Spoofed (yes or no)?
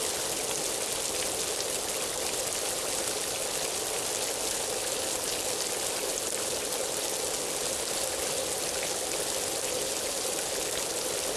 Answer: no